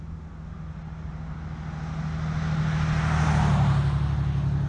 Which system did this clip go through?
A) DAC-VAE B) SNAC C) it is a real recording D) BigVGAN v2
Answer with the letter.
C